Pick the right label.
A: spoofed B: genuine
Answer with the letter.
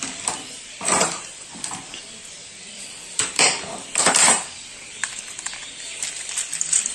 A